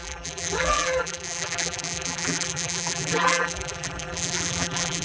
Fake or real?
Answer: fake